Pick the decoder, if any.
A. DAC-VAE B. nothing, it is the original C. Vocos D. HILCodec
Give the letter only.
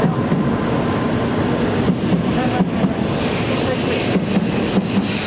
B